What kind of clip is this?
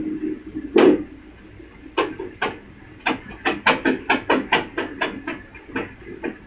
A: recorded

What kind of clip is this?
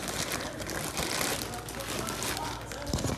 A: recorded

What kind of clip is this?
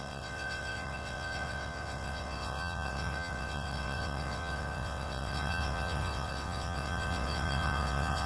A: remade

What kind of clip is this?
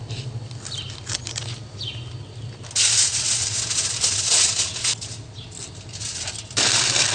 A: recorded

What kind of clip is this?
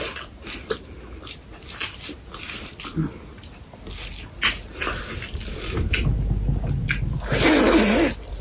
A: recorded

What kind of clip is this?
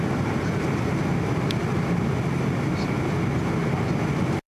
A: recorded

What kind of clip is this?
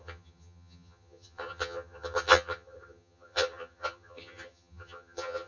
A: remade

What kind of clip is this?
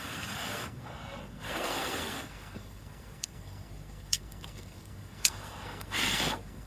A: remade